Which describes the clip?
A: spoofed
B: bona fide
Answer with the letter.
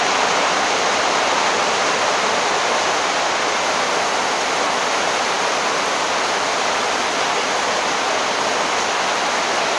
B